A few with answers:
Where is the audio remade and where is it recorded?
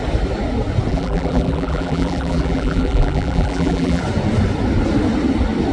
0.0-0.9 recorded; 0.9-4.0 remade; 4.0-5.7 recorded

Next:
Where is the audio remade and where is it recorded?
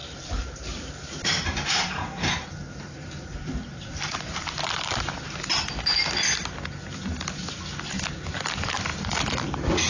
0.0-4.6 remade; 4.6-9.9 recorded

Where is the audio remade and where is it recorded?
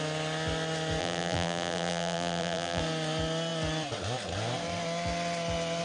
0.0-1.0 recorded; 1.0-2.8 remade; 2.8-5.8 recorded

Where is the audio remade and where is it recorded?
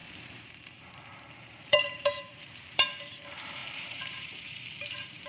0.0-5.3 remade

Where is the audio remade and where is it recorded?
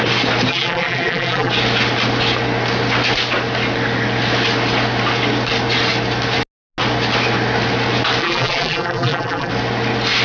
0.0-0.5 recorded; 0.5-1.5 remade; 1.5-8.2 recorded; 8.2-9.5 remade; 9.5-10.2 recorded